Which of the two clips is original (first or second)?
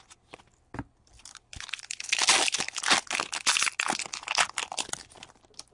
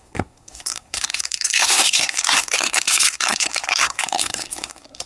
first